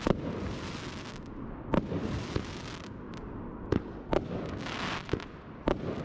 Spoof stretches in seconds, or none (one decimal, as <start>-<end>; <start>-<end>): none